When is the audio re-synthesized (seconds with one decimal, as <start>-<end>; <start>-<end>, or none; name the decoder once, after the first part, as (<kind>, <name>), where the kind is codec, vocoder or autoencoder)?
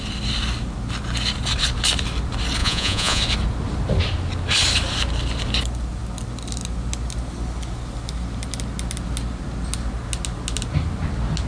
2.6-3.2 (vocoder, Vocos)